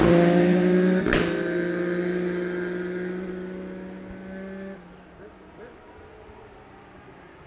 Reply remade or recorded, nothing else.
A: recorded